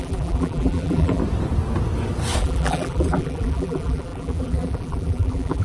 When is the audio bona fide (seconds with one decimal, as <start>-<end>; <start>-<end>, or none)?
1.2-2.4